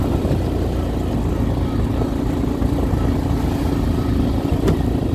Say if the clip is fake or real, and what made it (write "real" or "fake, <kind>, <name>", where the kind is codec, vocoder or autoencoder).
real